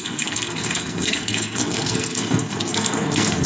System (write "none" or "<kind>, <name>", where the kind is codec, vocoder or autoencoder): codec, SNAC